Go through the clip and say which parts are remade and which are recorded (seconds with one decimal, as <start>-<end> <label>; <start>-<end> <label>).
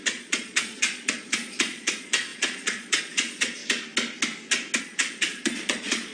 0.0-3.6 remade; 3.6-4.8 recorded; 4.8-6.1 remade